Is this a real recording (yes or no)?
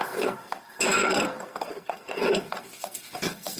no